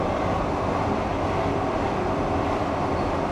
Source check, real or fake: real